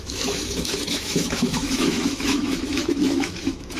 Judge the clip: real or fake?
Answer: fake